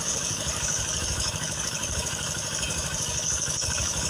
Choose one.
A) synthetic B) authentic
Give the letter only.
A